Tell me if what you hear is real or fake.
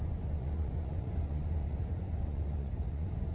fake